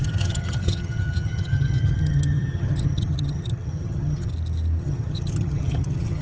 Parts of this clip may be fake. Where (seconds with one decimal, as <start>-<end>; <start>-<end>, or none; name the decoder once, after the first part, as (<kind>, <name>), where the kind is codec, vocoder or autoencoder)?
0.0-4.3 (vocoder, HiFi-GAN); 4.8-6.2